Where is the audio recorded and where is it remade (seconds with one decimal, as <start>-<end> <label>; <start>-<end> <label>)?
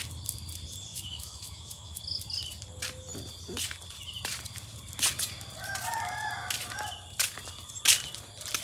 0.0-0.9 recorded; 0.9-2.0 remade; 2.0-8.6 recorded